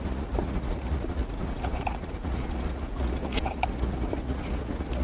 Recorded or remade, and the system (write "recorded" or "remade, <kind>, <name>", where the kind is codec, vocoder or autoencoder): remade, vocoder, Vocos